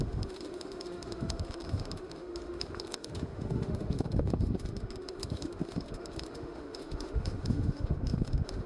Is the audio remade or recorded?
remade